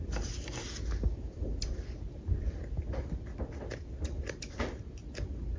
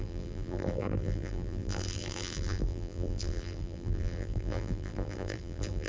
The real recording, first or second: first